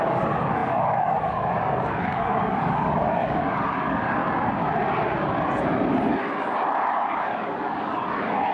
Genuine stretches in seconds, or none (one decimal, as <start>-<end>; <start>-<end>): 4.2-6.9